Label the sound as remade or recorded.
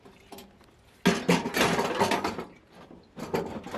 recorded